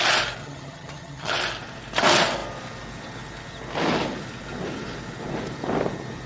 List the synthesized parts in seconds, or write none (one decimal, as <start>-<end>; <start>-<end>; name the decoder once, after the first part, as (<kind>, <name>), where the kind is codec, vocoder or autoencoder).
0.4-1.3 (vocoder, HiFi-GAN)